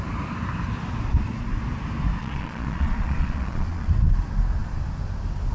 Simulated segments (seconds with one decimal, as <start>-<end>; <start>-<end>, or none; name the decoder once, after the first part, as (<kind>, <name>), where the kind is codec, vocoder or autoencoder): 2.2-3.9 (vocoder, Vocos)